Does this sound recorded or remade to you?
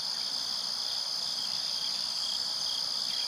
recorded